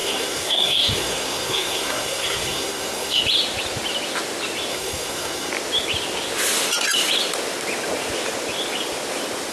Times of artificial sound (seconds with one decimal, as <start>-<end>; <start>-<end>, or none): 0.0-3.2; 4.7-5.5